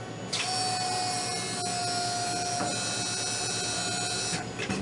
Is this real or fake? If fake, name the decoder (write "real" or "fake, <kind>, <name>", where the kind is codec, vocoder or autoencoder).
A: real